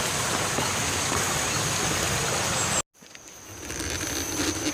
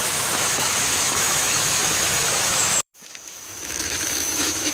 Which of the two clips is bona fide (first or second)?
first